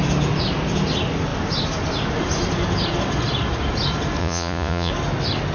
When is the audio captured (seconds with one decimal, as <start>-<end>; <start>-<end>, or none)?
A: 0.0-4.2; 4.9-5.5